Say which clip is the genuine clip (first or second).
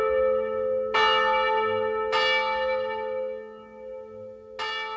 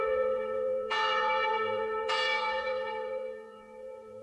first